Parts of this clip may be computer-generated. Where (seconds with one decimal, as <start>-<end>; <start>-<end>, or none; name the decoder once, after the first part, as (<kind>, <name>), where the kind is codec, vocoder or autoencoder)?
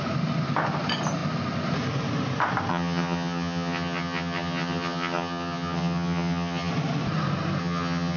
2.7-6.7 (vocoder, HiFi-GAN); 7.6-8.2